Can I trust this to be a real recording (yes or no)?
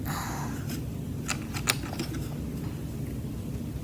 yes